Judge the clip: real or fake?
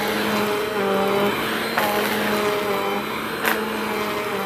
real